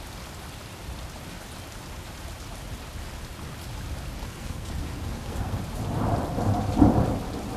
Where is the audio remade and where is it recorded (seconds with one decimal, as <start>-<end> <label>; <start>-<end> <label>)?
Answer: 0.0-4.2 recorded; 4.2-5.6 remade; 5.6-7.6 recorded